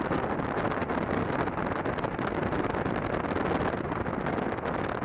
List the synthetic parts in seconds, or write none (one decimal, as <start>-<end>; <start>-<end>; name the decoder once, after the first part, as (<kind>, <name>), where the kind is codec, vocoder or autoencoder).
none